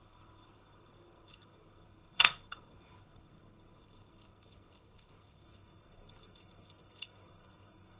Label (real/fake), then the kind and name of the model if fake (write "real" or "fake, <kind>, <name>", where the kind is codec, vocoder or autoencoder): fake, codec, SNAC